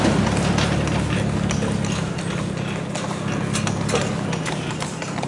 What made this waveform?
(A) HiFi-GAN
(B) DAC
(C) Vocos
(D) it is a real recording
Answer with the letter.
D